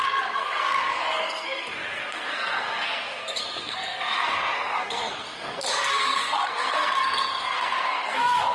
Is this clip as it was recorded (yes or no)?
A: no